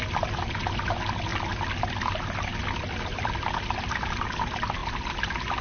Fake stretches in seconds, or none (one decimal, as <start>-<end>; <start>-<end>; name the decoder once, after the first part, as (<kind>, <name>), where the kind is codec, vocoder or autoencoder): none